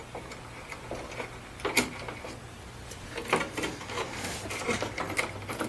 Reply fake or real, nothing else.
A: real